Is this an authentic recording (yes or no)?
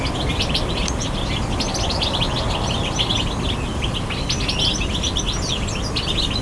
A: yes